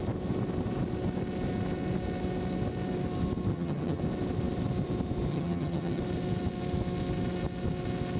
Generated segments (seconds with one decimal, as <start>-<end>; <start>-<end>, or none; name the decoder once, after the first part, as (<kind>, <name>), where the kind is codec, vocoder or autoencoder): 3.5-4.0 (vocoder, HiFi-GAN); 5.3-6.0